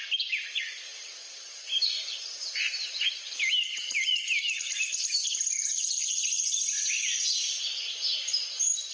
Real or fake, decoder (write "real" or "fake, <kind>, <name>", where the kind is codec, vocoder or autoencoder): real